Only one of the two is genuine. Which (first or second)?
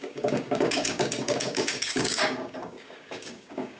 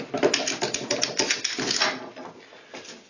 second